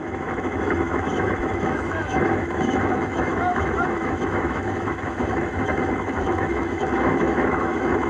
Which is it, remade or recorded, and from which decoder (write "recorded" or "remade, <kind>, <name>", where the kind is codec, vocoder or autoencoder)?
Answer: remade, autoencoder, DAC-VAE